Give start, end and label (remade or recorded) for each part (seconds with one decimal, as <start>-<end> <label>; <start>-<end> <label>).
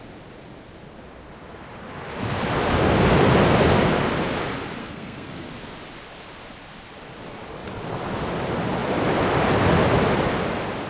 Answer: 0.0-4.8 recorded; 4.8-5.5 remade; 5.5-10.9 recorded